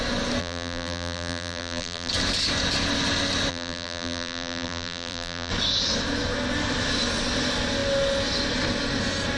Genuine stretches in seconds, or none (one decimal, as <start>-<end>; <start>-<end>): 0.0-0.4; 2.1-3.5; 5.5-9.4